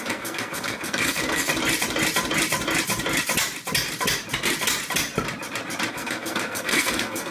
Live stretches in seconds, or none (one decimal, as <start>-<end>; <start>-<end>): 1.5-5.9